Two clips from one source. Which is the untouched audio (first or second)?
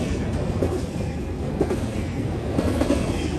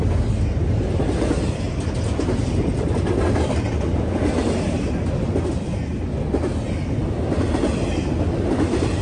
second